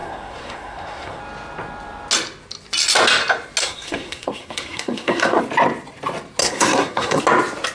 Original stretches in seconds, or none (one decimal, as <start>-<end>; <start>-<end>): 1.2-3.6; 5.4-6.4; 7.2-7.7